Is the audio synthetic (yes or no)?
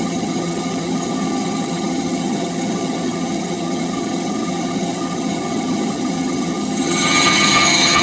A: yes